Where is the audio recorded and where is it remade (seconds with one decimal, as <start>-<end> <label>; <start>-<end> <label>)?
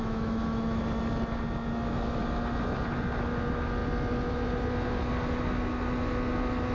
0.0-0.8 remade; 0.8-6.7 recorded